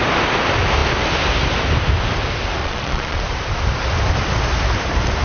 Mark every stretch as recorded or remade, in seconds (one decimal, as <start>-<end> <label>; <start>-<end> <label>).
0.0-2.6 recorded; 2.6-3.2 remade; 3.2-5.2 recorded